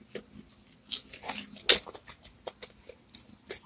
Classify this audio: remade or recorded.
recorded